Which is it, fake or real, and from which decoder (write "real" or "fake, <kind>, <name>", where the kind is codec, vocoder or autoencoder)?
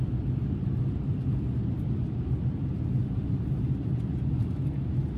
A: real